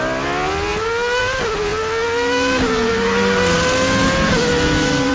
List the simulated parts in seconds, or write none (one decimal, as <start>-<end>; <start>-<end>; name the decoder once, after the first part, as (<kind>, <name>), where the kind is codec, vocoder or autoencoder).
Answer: none

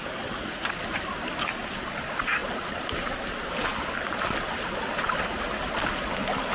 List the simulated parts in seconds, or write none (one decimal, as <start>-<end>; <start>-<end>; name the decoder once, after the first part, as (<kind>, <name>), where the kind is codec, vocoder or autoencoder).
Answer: none